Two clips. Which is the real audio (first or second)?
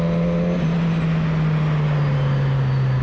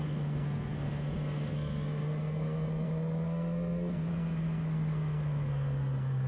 first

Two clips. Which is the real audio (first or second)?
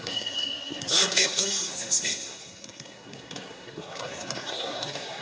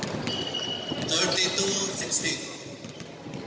second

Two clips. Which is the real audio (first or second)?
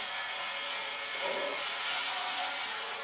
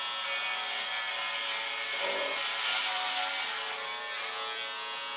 second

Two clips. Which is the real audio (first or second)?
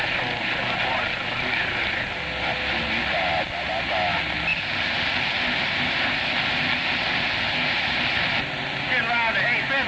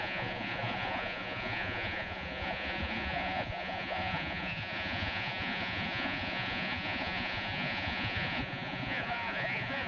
first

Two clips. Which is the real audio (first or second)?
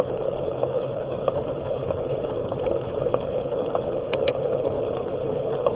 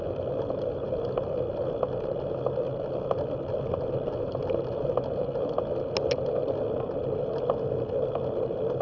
second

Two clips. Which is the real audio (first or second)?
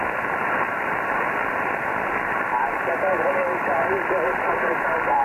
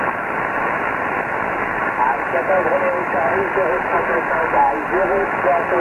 second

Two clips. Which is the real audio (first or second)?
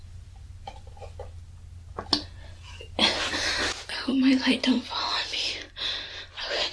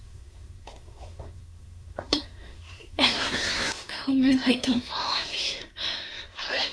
first